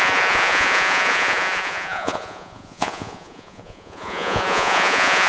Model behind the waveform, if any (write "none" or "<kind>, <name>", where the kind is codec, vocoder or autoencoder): vocoder, Vocos